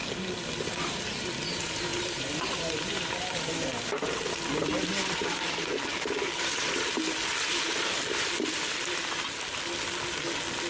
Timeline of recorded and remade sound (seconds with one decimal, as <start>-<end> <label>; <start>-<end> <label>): 0.0-1.9 recorded; 1.9-3.5 remade; 3.5-5.2 recorded; 5.2-5.9 remade; 5.9-10.7 recorded